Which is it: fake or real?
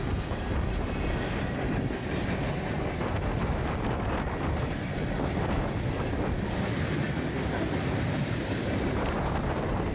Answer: real